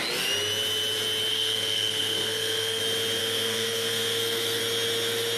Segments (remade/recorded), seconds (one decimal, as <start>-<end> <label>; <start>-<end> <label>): 0.0-1.3 recorded; 1.3-2.8 remade; 2.8-3.2 recorded; 3.2-4.6 remade; 4.6-5.4 recorded